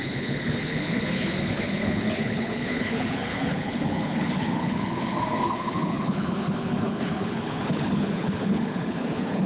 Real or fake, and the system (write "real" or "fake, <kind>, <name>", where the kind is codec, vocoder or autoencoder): fake, codec, HILCodec